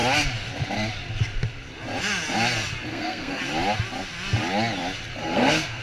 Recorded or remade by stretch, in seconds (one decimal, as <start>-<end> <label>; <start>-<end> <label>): 0.0-2.9 recorded; 2.9-3.4 remade; 3.4-5.2 recorded; 5.2-5.8 remade